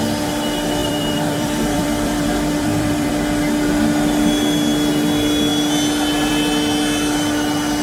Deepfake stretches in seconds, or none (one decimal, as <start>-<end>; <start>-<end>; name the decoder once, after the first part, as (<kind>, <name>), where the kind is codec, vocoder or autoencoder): 0.8-3.1 (vocoder, BigVGAN v2)